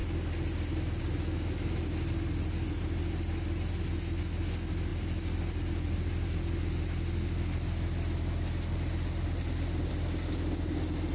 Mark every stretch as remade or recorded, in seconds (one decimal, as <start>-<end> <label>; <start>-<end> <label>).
0.0-11.1 recorded